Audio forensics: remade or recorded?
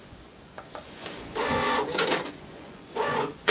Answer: remade